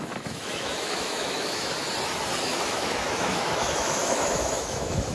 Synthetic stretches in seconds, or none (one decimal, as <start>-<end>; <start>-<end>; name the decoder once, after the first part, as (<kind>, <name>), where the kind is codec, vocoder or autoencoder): 0.0-1.8 (autoencoder, DAC-VAE); 2.4-5.1